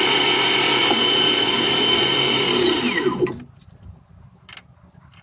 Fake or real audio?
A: fake